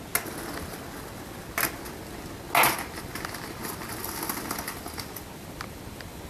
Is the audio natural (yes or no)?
yes